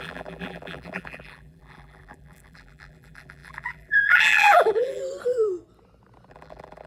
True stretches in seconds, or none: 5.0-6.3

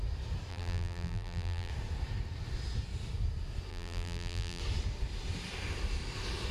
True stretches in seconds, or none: 0.0-0.5; 1.7-3.7; 4.6-6.5

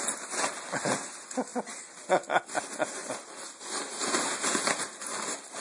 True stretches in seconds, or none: 0.0-3.0; 3.6-5.6

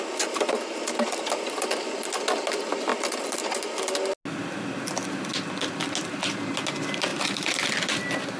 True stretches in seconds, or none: 0.0-2.9; 3.5-7.1; 8.0-8.4

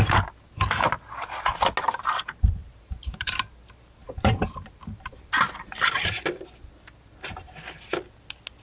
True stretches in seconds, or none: 0.0-2.6; 3.6-4.0; 6.0-8.6

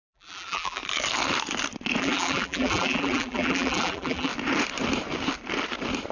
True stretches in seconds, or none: 0.8-2.0; 4.3-6.1

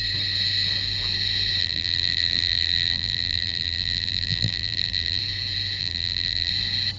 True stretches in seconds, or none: 0.0-1.6; 5.2-5.8; 6.5-7.0